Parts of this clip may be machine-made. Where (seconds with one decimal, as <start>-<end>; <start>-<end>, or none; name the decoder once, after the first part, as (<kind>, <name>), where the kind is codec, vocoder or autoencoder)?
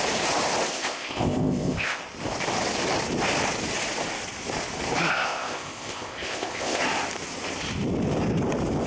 0.7-2.0 (codec, ZipCodec); 5.1-6.8